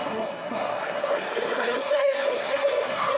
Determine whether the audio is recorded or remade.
remade